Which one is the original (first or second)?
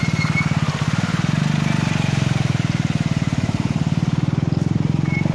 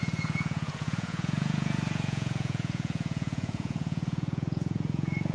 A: first